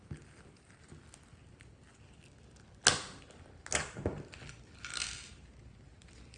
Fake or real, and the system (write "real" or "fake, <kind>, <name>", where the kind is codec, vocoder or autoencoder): real